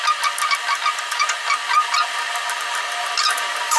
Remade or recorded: recorded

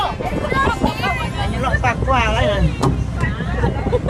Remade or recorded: recorded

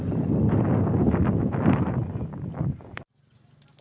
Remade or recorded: recorded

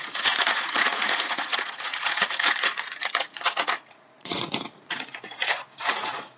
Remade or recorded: remade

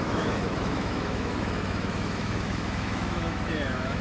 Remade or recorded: remade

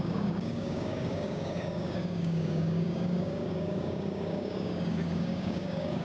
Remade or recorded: remade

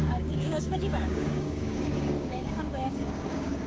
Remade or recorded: remade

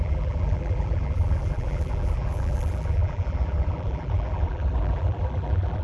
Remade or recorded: remade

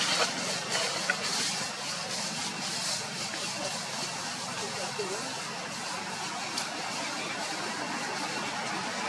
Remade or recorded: recorded